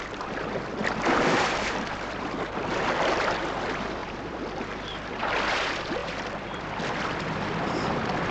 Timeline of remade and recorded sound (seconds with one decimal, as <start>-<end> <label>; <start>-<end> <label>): 0.0-0.8 recorded; 0.8-3.3 remade; 3.3-4.0 recorded; 4.0-5.1 remade; 5.1-6.0 recorded; 6.0-6.9 remade; 6.9-8.3 recorded